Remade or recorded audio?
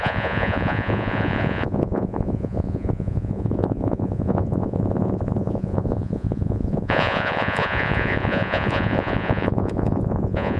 remade